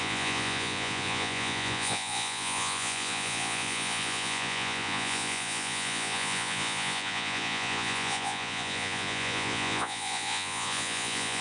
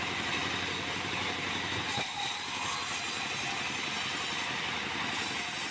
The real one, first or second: second